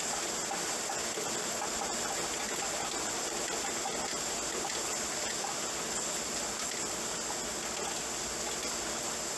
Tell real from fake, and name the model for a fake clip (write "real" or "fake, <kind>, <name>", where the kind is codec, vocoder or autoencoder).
real